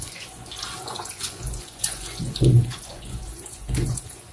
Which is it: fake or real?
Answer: fake